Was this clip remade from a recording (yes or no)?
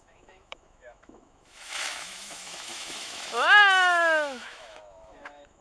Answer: yes